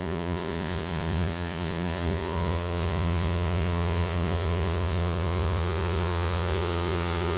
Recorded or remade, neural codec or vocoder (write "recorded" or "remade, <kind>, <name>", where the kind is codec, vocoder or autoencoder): remade, vocoder, Vocos